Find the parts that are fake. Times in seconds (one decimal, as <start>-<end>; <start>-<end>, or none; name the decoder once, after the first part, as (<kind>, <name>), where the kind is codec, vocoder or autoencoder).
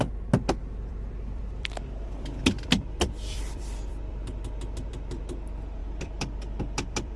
0.6-4.9 (vocoder, BigVGAN v2); 5.8-7.2